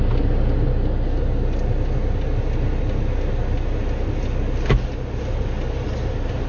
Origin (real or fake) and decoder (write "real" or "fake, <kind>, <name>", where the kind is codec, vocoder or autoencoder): real